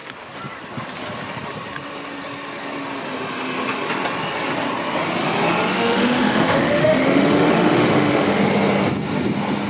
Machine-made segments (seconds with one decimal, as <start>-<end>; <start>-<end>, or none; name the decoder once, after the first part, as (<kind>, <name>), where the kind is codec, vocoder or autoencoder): 5.7-8.4 (autoencoder, DAC-VAE)